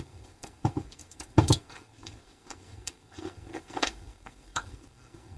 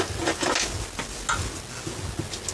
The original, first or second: second